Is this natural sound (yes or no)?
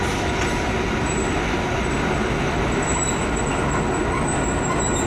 yes